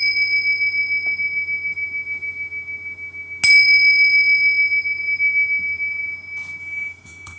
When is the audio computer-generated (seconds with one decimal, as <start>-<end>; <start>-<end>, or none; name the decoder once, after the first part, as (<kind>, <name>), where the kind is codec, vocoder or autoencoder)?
6.6-7.4 (autoencoder, DAC-VAE)